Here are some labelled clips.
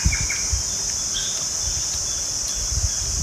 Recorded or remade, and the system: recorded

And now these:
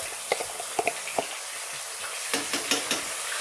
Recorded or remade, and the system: recorded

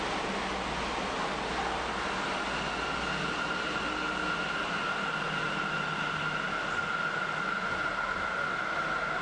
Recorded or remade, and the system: recorded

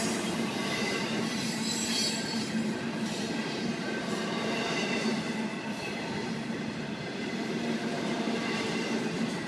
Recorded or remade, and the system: remade, vocoder, BigVGAN v2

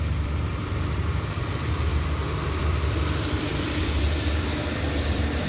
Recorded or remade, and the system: remade, vocoder, BigVGAN v2